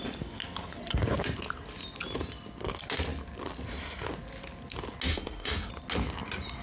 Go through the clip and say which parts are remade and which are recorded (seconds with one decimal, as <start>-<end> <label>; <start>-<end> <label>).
0.0-5.1 recorded; 5.1-5.7 remade; 5.7-6.6 recorded